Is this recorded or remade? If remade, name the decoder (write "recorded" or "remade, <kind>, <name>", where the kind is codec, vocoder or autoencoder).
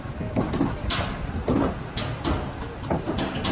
recorded